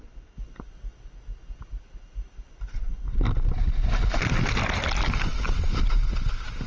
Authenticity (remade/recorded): recorded